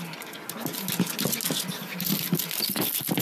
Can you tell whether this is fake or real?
real